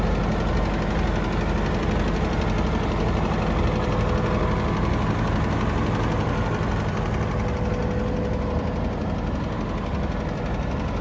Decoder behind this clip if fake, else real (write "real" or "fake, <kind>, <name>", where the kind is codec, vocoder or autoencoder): real